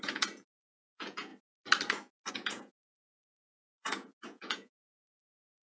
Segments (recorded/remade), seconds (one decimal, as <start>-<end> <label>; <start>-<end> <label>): 0.0-1.3 remade; 1.3-2.3 recorded; 2.3-5.6 remade